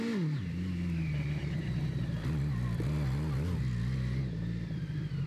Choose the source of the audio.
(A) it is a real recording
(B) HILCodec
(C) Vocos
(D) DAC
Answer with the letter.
A